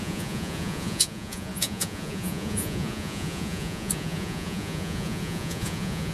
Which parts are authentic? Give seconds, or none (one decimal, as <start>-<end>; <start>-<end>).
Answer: none